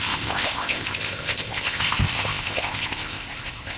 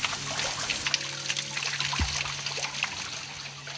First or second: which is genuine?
second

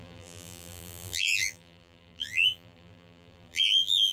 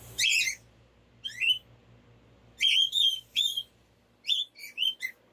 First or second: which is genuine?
second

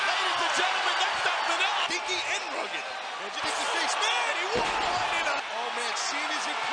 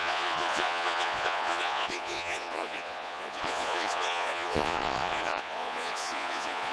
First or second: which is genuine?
first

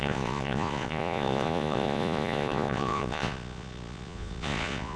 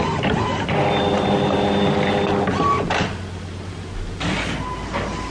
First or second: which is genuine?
second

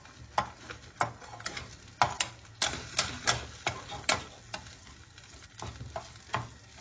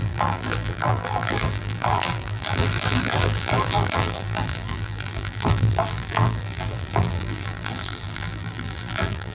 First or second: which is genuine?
first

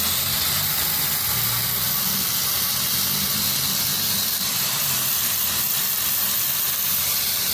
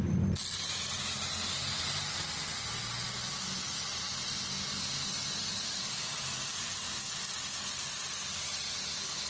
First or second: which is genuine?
second